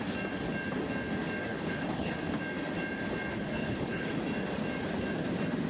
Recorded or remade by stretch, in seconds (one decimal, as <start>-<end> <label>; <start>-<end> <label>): 0.0-1.5 recorded; 1.5-2.1 remade; 2.1-3.3 recorded; 3.3-4.2 remade; 4.2-5.7 recorded